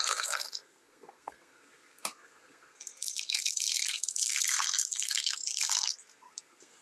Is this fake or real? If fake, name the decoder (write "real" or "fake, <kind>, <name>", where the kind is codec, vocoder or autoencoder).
fake, codec, SNAC